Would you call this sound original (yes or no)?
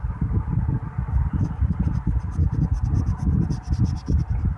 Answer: yes